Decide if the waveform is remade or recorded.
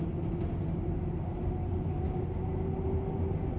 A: recorded